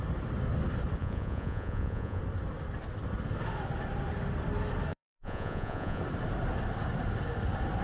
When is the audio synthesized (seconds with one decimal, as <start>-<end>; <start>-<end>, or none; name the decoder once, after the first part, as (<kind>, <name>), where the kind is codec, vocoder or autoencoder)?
1.0-2.2 (vocoder, Vocos); 4.9-6.0